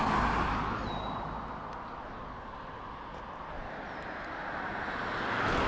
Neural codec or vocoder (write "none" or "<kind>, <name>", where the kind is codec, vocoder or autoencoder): none